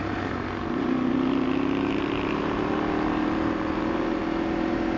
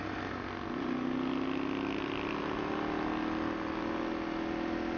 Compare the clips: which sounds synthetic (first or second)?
first